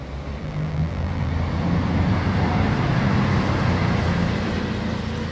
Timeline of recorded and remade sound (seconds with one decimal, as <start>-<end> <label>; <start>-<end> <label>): 0.0-0.4 recorded; 0.4-1.3 remade; 1.3-5.3 recorded